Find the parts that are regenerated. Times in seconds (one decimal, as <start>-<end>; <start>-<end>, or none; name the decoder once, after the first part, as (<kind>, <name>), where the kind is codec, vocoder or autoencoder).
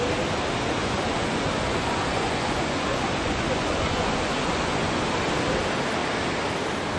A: 0.8-5.0 (vocoder, Vocos)